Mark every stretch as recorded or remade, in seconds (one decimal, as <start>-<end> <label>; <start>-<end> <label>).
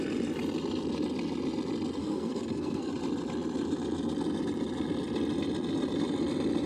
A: 0.0-2.0 recorded; 2.0-2.9 remade; 2.9-6.7 recorded